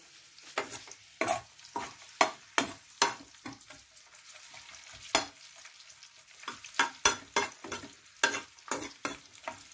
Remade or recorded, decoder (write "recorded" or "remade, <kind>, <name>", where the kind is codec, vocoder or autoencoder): recorded